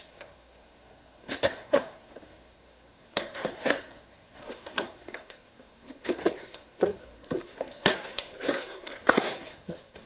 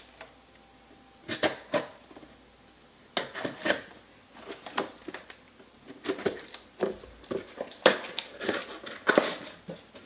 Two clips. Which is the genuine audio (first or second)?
second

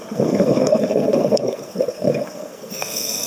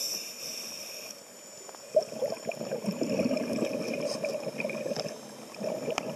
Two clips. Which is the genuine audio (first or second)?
second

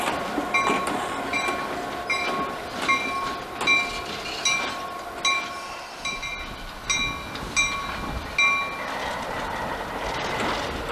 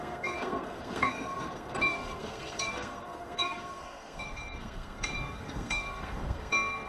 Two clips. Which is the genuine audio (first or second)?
first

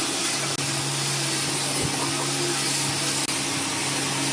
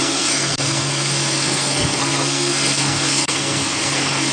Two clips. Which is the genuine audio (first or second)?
first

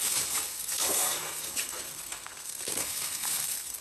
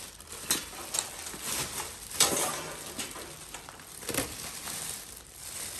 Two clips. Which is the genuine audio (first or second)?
second